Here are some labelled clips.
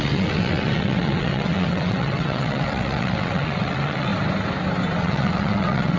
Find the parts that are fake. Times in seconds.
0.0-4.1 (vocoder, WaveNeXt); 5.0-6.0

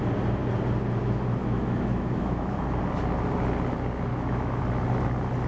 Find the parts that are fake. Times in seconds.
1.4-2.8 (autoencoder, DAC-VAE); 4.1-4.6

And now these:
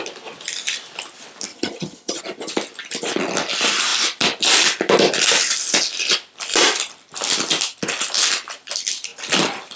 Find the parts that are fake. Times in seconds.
1.5-2.2 (vocoder, HiFi-GAN)